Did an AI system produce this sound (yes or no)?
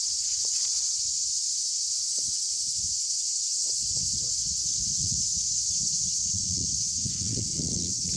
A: yes